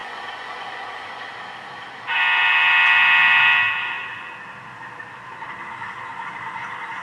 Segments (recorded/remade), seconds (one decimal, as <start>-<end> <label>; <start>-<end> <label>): 0.0-1.2 remade; 1.2-3.8 recorded; 3.8-4.3 remade; 4.3-7.0 recorded